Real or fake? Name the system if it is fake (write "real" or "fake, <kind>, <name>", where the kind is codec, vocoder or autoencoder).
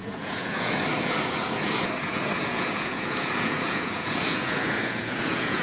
fake, vocoder, Vocos